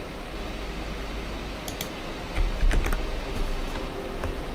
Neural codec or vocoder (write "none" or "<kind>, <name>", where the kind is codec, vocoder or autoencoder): none